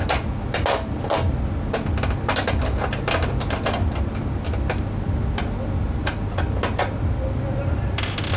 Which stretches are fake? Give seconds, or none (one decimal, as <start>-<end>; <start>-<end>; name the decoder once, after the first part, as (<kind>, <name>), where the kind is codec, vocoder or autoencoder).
none